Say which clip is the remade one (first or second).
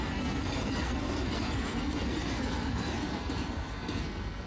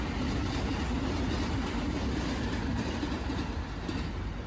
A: first